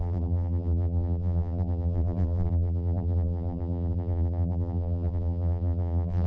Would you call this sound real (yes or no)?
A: no